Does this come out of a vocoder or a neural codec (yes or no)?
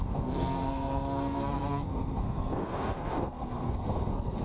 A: yes